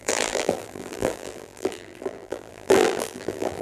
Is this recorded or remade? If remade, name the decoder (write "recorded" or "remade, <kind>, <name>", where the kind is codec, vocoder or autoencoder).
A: remade, vocoder, BigVGAN v2